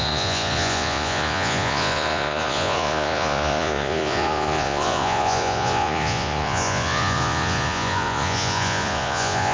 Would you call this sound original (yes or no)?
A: no